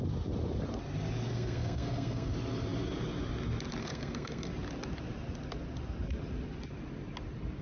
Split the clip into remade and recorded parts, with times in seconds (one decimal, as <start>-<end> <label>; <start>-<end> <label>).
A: 0.0-1.3 recorded; 1.3-2.3 remade; 2.3-3.8 recorded; 3.8-4.5 remade; 4.5-7.6 recorded